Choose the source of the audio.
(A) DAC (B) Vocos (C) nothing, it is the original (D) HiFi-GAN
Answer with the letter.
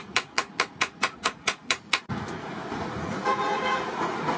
B